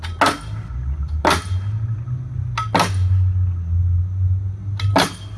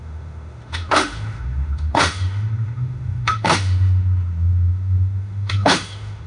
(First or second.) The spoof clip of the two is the second